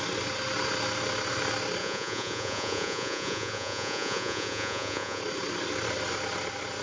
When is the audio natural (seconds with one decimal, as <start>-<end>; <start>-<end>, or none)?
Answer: 0.0-1.8; 5.2-6.8

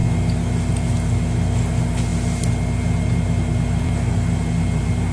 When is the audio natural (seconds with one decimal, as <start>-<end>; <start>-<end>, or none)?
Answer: 0.0-5.1